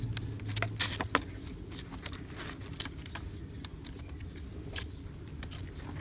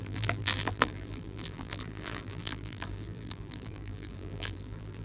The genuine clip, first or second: first